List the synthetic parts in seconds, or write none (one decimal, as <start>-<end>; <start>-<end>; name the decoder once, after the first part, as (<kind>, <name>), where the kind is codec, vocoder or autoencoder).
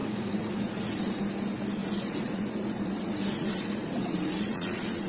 0.0-1.2 (vocoder, Vocos); 1.8-5.1